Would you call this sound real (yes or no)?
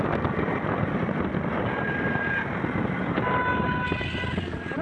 yes